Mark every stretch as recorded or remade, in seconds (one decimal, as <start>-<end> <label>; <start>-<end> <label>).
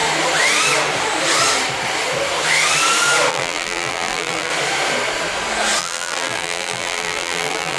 0.0-3.3 recorded; 3.3-4.5 remade; 4.5-5.8 recorded; 5.8-7.8 remade